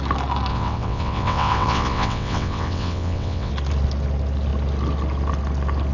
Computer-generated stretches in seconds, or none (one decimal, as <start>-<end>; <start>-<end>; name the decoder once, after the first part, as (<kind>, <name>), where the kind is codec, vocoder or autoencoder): 0.5-3.5 (vocoder, WaveNeXt)